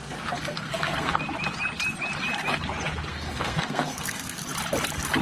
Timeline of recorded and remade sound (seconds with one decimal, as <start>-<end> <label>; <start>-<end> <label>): 0.0-1.2 remade; 1.2-3.1 recorded; 3.1-4.4 remade; 4.4-5.2 recorded